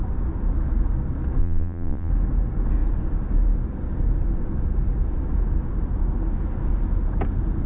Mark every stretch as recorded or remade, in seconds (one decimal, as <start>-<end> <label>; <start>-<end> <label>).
0.0-1.4 recorded; 1.4-2.1 remade; 2.1-7.7 recorded